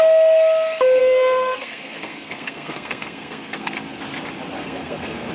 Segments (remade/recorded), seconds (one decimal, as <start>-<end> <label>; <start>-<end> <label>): 0.0-1.0 recorded; 1.0-4.0 remade; 4.0-4.6 recorded; 4.6-5.3 remade